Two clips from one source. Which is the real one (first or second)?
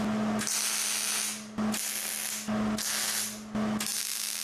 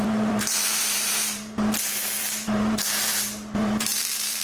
first